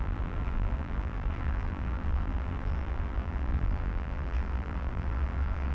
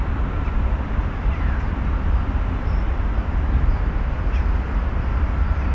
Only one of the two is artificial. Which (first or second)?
first